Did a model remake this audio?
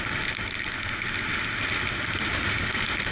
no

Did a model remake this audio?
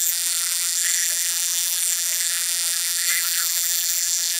yes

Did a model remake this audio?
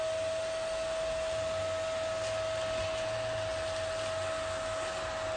no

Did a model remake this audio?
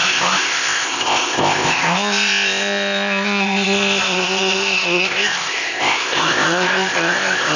yes